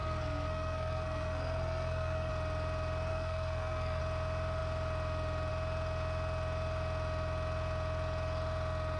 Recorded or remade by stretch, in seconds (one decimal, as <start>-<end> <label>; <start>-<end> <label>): 0.0-2.3 remade; 2.3-3.1 recorded; 3.1-4.0 remade; 4.0-9.0 recorded